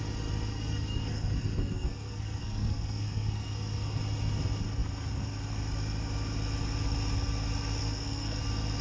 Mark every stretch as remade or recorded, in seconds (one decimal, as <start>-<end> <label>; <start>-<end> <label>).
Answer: 0.0-0.5 recorded; 0.5-4.0 remade; 4.0-7.8 recorded; 7.8-8.4 remade; 8.4-8.8 recorded